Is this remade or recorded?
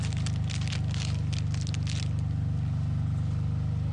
recorded